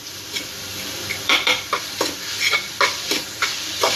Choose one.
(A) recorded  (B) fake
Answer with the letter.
B